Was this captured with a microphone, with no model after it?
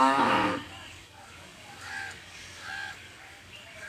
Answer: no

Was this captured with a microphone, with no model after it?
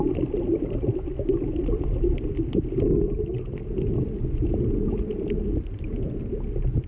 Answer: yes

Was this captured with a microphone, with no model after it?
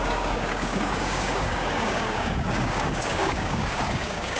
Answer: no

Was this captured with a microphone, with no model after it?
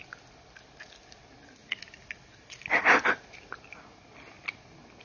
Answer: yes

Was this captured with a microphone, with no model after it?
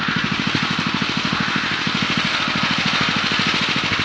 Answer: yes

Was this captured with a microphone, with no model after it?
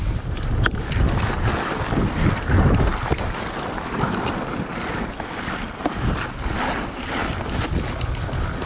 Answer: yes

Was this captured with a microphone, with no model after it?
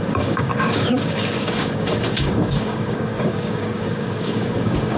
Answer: no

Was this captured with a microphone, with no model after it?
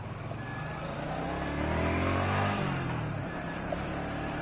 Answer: yes